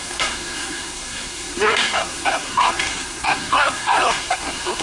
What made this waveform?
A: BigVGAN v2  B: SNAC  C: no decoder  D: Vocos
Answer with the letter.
B